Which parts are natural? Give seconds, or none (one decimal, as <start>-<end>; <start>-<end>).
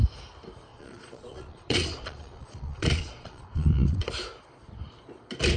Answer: 0.0-0.7; 4.1-5.6